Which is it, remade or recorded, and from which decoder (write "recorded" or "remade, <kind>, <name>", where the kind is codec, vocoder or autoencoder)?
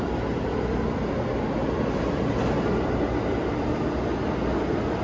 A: recorded